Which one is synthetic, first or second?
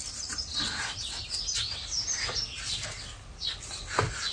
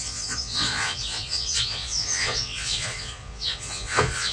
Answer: second